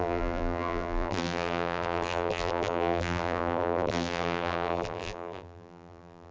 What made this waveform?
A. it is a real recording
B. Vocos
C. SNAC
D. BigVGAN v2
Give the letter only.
D